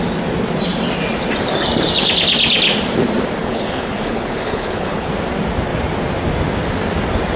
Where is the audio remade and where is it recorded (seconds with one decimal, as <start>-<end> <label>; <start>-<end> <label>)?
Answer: 0.0-3.4 recorded; 3.4-5.1 remade; 5.1-7.4 recorded